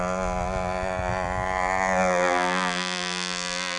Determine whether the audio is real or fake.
real